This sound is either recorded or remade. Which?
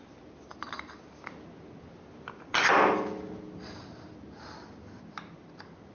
recorded